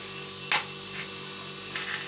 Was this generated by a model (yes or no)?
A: no